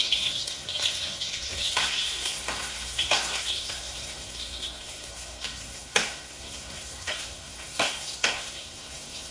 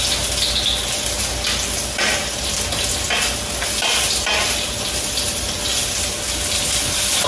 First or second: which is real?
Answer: second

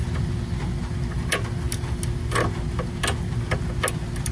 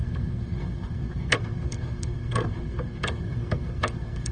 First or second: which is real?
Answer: first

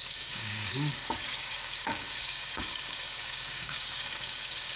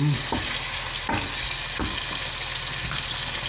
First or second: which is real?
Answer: second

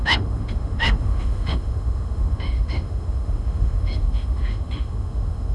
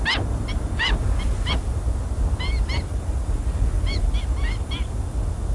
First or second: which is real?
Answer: second